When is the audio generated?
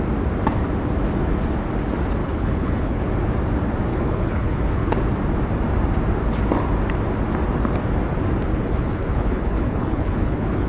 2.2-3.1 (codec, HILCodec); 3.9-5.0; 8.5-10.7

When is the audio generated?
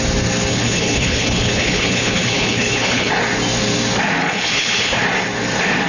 0.5-3.1 (codec, HILCodec); 4.2-5.0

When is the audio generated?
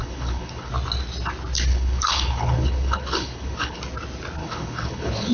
0.0-0.7 (codec, HILCodec); 1.7-3.8; 4.4-5.3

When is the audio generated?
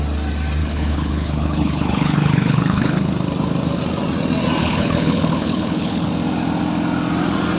0.6-3.0 (codec, HILCodec); 4.6-6.1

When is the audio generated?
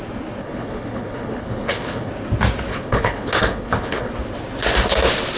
0.4-2.1 (codec, HILCodec); 2.7-4.1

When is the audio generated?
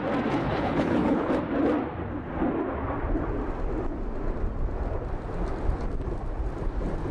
0.4-1.3 (codec, HILCodec)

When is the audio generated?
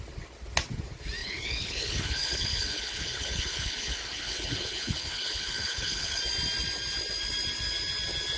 1.2-6.2 (codec, HILCodec)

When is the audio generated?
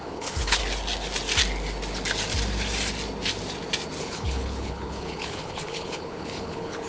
0.0-0.6 (codec, HILCodec); 4.0-6.9